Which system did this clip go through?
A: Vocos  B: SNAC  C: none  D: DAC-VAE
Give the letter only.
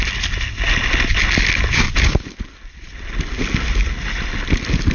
C